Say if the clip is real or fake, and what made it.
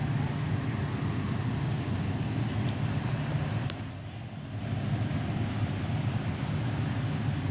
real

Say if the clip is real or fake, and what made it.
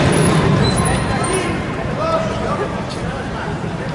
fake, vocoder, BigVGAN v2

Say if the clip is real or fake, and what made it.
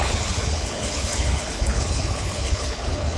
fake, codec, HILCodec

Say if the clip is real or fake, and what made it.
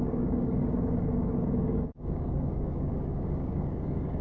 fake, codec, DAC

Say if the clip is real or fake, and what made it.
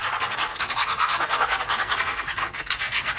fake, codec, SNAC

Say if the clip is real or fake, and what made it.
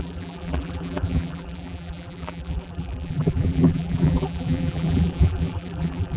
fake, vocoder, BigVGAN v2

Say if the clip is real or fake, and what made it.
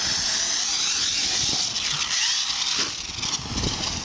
real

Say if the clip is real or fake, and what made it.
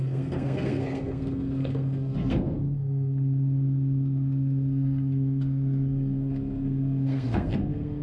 fake, codec, SNAC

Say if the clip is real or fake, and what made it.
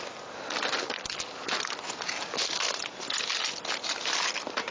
real